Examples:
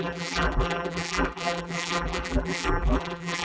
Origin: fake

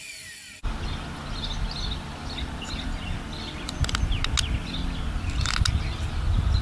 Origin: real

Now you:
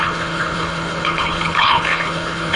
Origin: fake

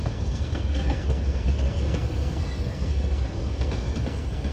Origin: fake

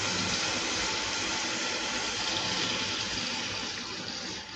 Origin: real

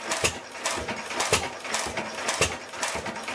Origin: real